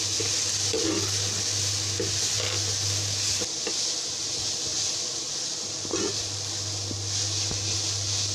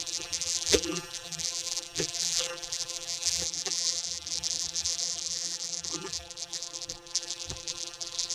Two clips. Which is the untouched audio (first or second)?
first